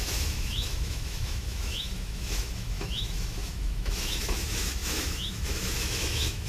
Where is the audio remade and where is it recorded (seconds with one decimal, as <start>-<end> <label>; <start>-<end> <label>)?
0.0-6.5 remade